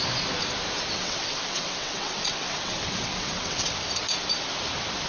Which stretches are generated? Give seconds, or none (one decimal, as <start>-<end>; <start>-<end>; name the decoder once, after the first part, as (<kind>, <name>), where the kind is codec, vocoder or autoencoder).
0.9-4.0 (vocoder, WaveNeXt)